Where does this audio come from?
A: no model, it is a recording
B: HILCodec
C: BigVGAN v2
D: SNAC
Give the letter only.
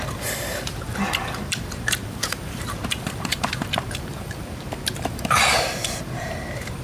C